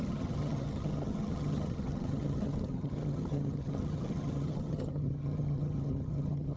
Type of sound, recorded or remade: remade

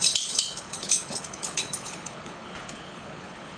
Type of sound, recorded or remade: remade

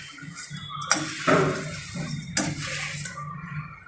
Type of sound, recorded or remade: recorded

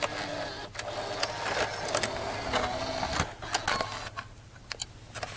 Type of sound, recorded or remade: recorded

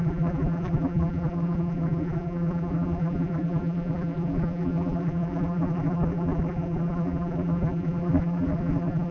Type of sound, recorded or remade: remade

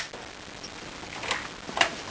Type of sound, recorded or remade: recorded